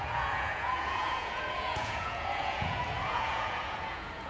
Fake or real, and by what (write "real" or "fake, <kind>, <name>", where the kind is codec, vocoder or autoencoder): fake, vocoder, Vocos